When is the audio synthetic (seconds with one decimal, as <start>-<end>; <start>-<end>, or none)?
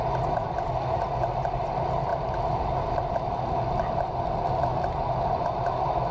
none